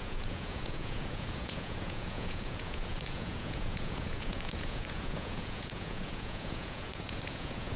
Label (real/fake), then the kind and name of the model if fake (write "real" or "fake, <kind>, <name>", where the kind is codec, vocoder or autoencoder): fake, vocoder, Vocos